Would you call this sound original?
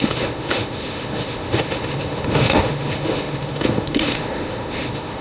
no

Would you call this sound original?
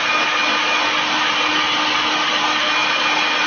yes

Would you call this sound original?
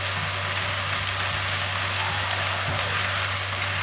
yes